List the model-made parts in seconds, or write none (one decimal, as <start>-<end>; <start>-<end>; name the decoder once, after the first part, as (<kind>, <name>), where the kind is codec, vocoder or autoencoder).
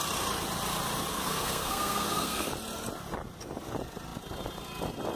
1.1-2.5 (codec, SNAC)